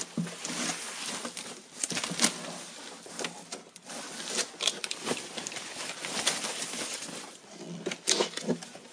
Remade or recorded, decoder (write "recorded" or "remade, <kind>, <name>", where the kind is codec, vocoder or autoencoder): recorded